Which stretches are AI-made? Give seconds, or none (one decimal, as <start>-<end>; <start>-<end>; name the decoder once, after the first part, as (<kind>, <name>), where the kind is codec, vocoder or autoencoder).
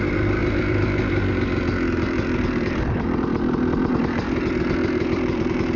0.0-5.8 (vocoder, BigVGAN v2)